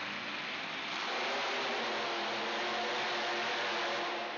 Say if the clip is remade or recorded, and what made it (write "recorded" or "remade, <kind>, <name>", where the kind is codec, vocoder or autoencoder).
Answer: recorded